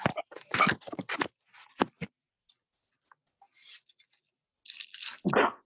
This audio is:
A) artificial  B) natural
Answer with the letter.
B